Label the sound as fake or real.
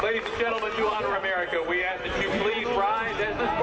real